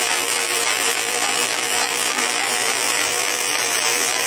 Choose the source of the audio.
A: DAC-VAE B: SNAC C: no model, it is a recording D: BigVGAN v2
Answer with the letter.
D